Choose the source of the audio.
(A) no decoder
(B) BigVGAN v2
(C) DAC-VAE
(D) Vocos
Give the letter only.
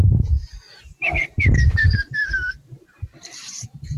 B